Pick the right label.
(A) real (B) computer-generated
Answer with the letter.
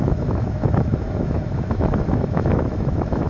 B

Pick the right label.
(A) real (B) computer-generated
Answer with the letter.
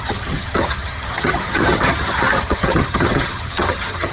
B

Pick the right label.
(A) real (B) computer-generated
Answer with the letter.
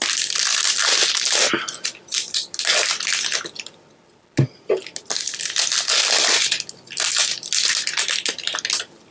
A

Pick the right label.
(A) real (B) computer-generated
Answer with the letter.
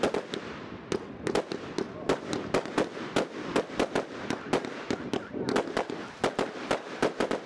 A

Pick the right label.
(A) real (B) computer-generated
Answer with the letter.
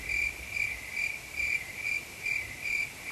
A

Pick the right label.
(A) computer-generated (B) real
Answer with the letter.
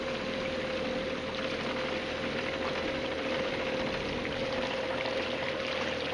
B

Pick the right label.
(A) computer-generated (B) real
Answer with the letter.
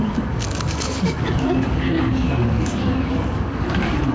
A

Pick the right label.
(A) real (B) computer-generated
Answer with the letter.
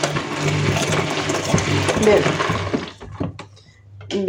A